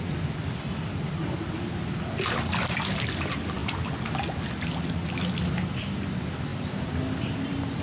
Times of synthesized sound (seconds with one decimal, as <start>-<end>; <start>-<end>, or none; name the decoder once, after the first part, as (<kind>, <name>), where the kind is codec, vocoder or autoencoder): none